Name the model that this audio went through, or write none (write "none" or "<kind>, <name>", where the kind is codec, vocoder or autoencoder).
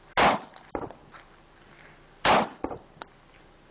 none